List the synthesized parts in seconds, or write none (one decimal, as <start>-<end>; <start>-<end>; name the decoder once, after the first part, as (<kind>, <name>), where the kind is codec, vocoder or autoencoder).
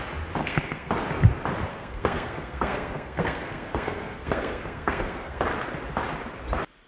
0.4-0.9 (codec, SNAC); 1.7-5.4